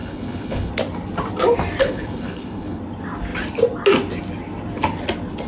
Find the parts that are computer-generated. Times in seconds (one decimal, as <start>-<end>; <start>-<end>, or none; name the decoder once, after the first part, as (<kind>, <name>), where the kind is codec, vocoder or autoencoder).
0.0-0.7 (codec, HILCodec); 1.8-2.8